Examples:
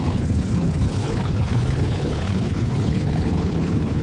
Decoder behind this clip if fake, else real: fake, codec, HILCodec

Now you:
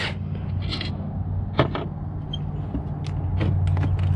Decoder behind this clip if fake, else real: real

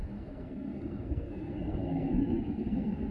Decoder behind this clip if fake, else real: fake, codec, SNAC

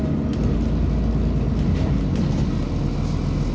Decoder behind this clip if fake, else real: real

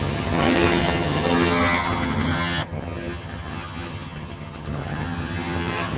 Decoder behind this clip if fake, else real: fake, vocoder, HiFi-GAN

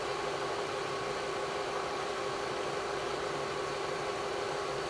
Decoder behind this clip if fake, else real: real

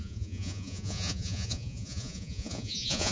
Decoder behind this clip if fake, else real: fake, vocoder, Vocos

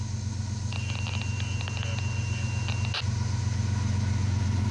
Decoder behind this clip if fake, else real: real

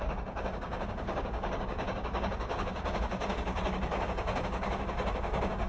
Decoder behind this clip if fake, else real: fake, codec, DAC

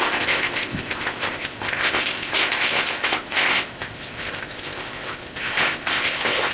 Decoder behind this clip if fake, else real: fake, codec, ZipCodec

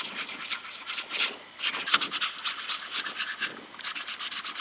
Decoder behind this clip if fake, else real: real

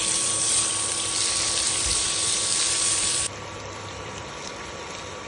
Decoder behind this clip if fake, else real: fake, vocoder, BigVGAN v2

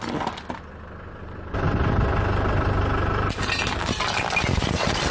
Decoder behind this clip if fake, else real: real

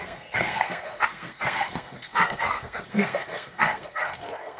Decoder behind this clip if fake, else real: fake, codec, SNAC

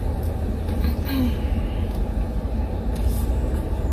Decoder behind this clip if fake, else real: real